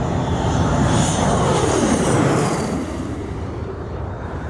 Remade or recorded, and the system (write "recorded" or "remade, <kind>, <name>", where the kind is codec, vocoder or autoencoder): remade, vocoder, BigVGAN v2